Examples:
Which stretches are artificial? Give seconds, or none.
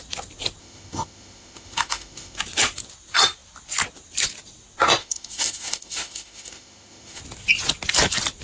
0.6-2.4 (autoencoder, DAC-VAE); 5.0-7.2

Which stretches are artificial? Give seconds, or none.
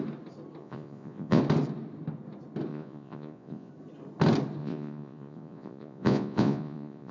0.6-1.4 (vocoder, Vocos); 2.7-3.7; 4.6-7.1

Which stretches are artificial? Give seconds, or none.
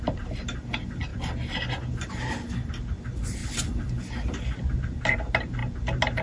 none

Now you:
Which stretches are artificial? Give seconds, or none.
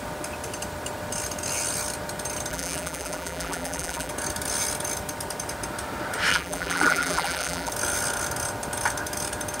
2.5-4.1 (vocoder, BigVGAN v2); 6.3-7.7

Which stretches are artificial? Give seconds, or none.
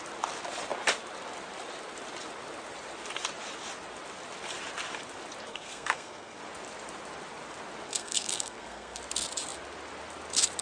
5.5-6.4 (codec, SNAC); 7.9-9.0